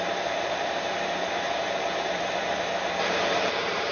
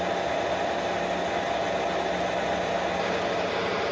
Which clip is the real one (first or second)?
second